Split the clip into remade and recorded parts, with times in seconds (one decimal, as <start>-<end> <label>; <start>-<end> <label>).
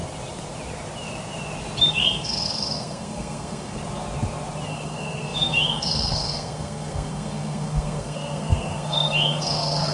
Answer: 0.0-1.9 recorded; 1.9-3.8 remade; 3.8-4.7 recorded; 4.7-9.9 remade